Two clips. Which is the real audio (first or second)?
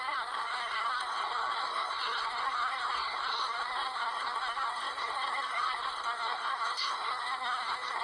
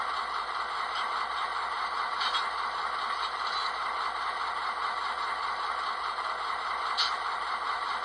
second